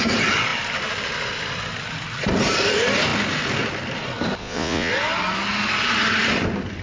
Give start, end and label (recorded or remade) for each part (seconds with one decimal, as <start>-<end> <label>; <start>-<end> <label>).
0.0-4.4 recorded; 4.4-4.9 remade; 4.9-6.8 recorded